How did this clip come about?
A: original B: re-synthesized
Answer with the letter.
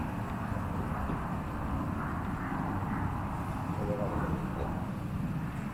A